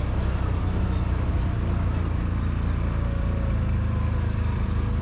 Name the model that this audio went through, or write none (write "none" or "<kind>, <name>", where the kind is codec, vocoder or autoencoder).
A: none